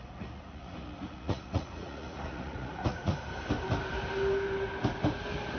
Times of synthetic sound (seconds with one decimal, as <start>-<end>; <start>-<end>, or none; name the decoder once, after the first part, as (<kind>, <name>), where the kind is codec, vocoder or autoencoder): 0.0-3.1 (vocoder, Vocos)